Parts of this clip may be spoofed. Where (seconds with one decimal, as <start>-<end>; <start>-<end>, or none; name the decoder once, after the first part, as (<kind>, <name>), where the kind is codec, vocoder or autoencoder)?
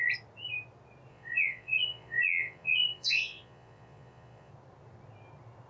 1.1-4.5 (vocoder, Vocos)